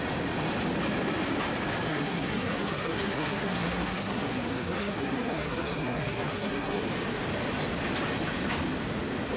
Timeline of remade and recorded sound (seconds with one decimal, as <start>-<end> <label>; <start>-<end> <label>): 0.0-1.9 recorded; 1.9-6.8 remade; 6.8-9.4 recorded

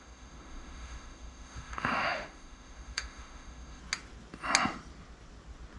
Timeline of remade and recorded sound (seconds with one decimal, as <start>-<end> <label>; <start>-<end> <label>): 0.0-3.8 remade; 3.8-5.8 recorded

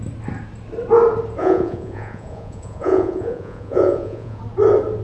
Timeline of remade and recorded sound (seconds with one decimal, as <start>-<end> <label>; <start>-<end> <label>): 0.0-1.4 recorded; 1.4-4.4 remade; 4.4-5.0 recorded

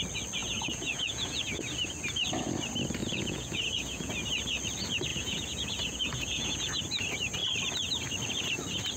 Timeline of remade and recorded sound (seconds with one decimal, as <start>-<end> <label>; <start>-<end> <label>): 0.0-0.4 recorded; 0.4-1.6 remade; 1.6-3.0 recorded; 3.0-4.1 remade; 4.1-5.1 recorded; 5.1-6.8 remade; 6.8-9.0 recorded

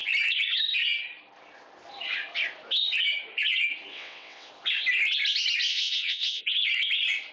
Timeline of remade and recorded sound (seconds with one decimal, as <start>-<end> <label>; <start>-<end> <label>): 0.0-3.9 recorded; 3.9-4.5 remade; 4.5-5.7 recorded; 5.7-6.4 remade; 6.4-7.3 recorded

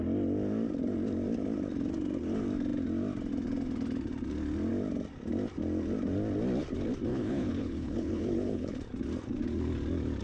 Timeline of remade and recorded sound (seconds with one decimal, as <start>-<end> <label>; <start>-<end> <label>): 0.0-7.1 recorded; 7.1-8.8 remade; 8.8-10.2 recorded

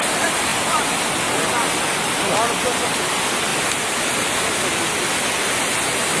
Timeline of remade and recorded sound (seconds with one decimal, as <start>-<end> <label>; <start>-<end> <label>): 0.0-6.2 recorded

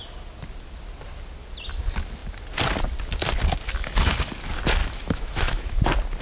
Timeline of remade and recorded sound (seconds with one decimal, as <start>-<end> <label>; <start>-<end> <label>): 0.0-4.8 recorded; 4.8-5.8 remade; 5.8-6.2 recorded